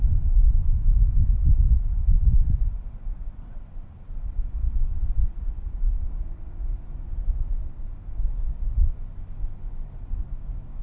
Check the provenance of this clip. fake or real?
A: real